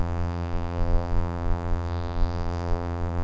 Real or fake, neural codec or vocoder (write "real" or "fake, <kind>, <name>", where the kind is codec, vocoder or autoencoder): fake, vocoder, BigVGAN v2